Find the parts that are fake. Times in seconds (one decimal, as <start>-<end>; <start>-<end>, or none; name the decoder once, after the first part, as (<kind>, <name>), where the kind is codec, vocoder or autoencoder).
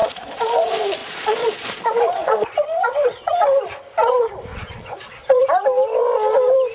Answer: 0.0-0.5 (vocoder, Vocos); 1.0-1.8; 2.2-3.3; 4.5-5.4